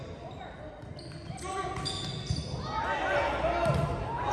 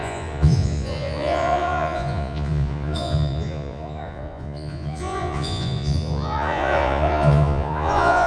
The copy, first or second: second